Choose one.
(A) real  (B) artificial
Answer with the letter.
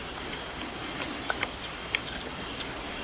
A